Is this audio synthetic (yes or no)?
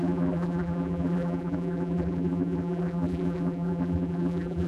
yes